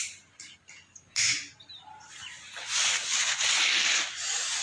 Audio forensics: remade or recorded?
recorded